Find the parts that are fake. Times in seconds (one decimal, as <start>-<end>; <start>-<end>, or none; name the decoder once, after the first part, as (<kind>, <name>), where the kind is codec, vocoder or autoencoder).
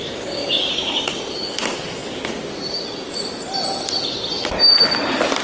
0.0-0.7 (codec, DAC)